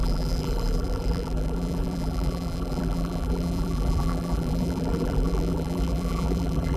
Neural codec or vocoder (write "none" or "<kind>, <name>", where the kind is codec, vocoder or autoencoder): vocoder, BigVGAN v2